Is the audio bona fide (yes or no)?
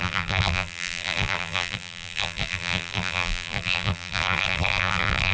no